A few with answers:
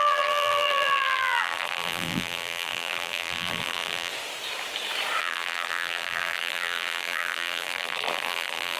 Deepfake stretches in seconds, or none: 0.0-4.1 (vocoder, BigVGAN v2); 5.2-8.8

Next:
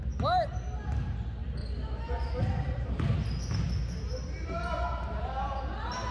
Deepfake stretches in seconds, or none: 1.6-2.4 (vocoder, BigVGAN v2)

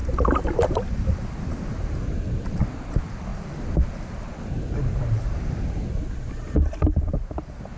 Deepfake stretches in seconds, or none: 0.0-1.2 (vocoder, BigVGAN v2)

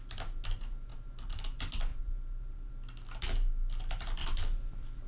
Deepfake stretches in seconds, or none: 0.9-1.4 (vocoder, BigVGAN v2); 1.9-2.7; 4.2-5.1

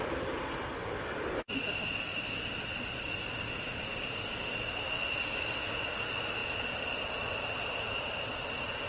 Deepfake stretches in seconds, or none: none

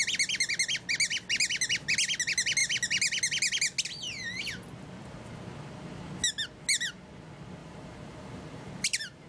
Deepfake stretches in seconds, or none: 7.6-9.3 (vocoder, BigVGAN v2)

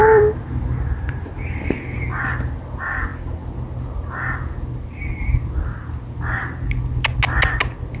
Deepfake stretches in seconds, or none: 0.0-1.8 (vocoder, BigVGAN v2)

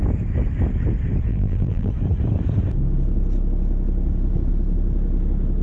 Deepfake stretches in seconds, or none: 1.3-1.9 (vocoder, BigVGAN v2)